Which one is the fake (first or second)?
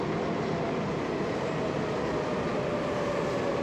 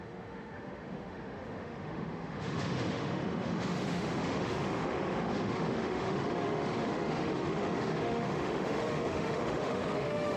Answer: second